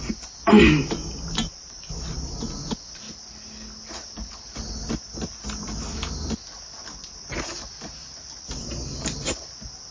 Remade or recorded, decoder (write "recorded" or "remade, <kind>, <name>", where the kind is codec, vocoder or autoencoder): recorded